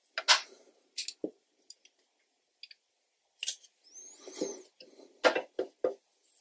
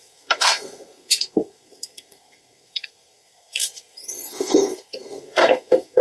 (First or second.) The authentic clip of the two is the first